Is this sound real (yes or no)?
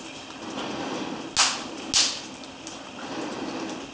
yes